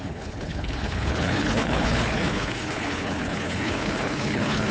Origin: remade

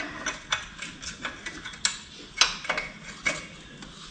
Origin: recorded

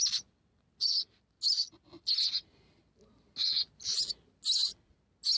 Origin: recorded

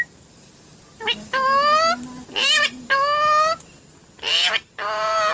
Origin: recorded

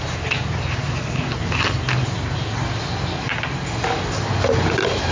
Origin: recorded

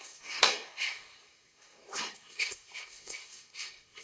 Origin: remade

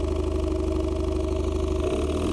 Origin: recorded